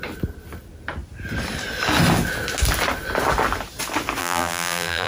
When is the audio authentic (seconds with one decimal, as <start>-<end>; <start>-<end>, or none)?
0.0-4.2